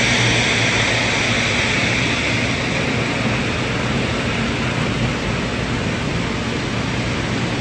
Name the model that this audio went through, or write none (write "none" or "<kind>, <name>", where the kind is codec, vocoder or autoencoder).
none